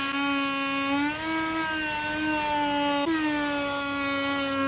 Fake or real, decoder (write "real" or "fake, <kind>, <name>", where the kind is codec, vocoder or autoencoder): real